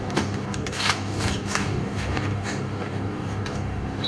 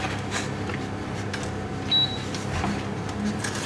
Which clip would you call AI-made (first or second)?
first